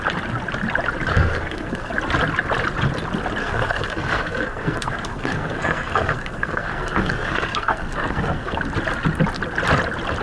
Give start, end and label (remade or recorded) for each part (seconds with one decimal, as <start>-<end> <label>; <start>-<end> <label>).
0.0-1.1 recorded; 1.1-1.9 remade; 1.9-3.4 recorded; 3.4-8.6 remade; 8.6-10.2 recorded